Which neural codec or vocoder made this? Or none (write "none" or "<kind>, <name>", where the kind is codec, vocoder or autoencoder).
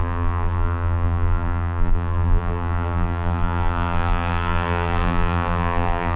vocoder, BigVGAN v2